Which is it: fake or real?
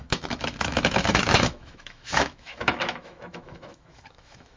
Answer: fake